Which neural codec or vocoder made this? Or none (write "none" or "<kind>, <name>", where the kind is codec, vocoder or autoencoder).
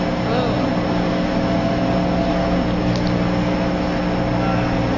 none